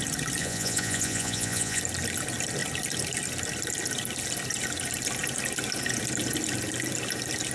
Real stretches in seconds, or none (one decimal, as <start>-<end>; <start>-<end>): 0.0-0.4; 1.8-7.5